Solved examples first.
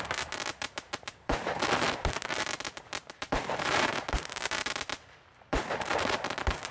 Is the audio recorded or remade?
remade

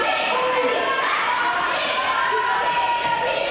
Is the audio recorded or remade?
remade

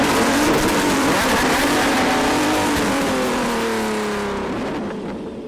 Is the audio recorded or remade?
remade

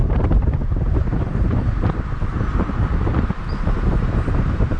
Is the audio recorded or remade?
remade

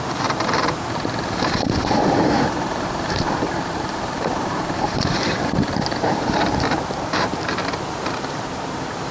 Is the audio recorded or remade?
remade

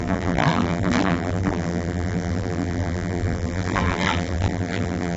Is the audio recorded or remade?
remade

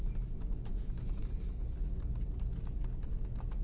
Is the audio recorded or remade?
recorded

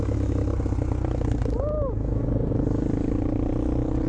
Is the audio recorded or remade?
recorded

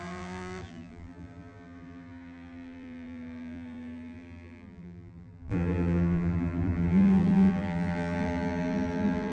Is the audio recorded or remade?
remade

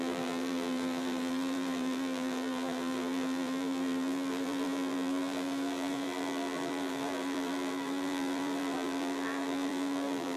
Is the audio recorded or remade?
remade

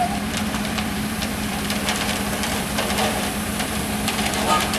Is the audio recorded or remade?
remade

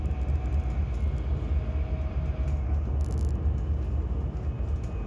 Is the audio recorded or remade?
recorded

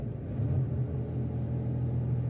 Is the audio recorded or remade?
recorded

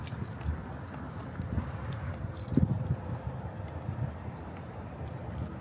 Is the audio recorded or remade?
recorded